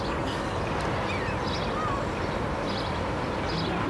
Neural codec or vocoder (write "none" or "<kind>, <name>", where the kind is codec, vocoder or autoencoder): none